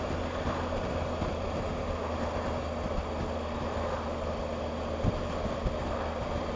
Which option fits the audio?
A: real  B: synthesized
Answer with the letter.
A